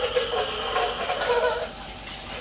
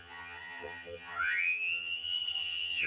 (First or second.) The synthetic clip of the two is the second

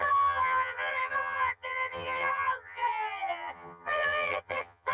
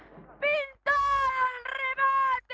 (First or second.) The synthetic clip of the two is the first